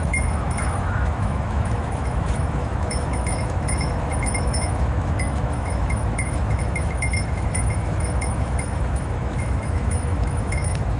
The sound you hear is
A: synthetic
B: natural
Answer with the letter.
A